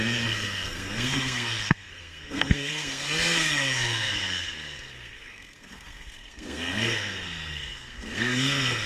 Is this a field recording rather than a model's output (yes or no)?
no